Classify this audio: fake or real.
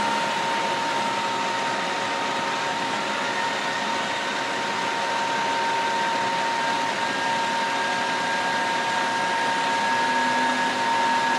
real